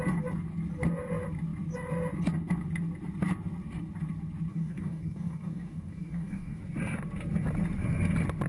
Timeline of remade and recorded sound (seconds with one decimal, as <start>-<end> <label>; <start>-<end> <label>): 0.0-4.5 recorded; 4.5-6.6 remade; 6.6-8.5 recorded